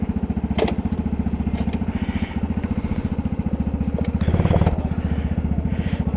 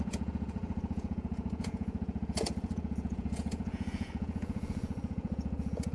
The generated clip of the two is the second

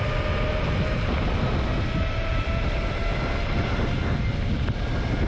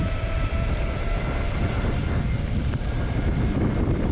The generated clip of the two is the second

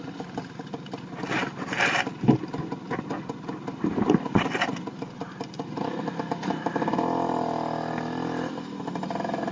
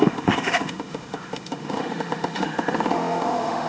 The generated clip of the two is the second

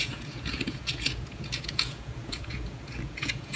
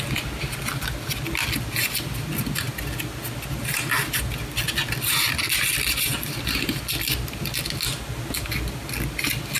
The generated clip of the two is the first